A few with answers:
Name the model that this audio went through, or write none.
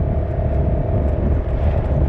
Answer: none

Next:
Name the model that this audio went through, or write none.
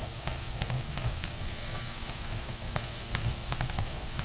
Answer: codec, SNAC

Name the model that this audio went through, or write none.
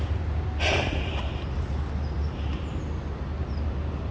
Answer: none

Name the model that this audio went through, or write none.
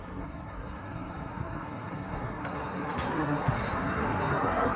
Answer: codec, SNAC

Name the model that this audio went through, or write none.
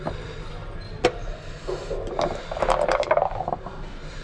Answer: none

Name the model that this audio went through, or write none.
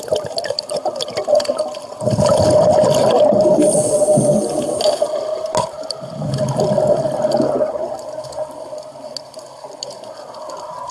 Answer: none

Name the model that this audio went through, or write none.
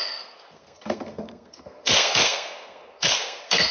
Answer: codec, SNAC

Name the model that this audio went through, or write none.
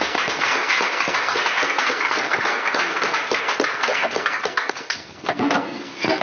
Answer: codec, SNAC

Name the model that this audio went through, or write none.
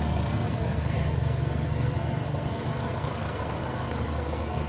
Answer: codec, SNAC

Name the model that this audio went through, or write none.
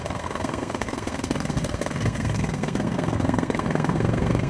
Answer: codec, SNAC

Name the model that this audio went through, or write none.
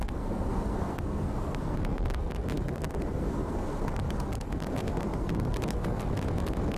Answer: codec, SNAC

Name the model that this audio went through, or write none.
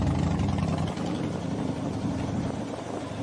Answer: none